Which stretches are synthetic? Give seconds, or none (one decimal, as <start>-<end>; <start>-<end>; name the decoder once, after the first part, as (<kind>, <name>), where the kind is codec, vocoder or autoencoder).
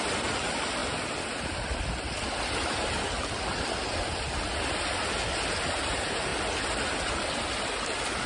none